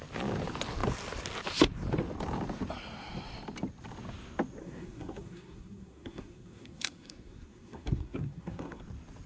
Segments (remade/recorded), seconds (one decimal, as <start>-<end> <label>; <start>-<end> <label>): 0.0-4.6 recorded; 4.6-8.8 remade; 8.8-9.3 recorded